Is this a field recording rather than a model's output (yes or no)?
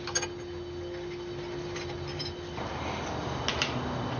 yes